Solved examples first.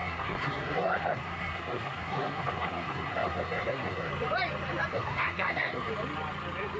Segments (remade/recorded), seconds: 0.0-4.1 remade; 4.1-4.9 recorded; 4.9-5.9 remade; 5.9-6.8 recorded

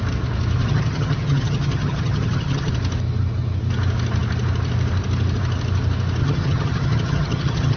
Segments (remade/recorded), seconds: 0.0-0.6 recorded; 0.6-2.7 remade; 2.7-6.2 recorded; 6.2-7.8 remade

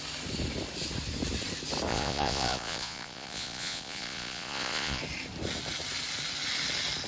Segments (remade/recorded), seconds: 0.0-1.9 recorded; 1.9-5.0 remade; 5.0-7.1 recorded